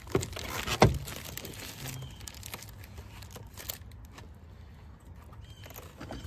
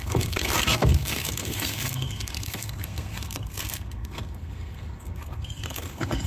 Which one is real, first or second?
first